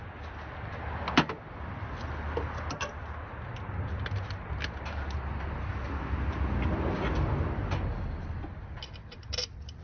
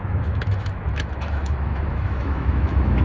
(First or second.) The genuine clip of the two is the first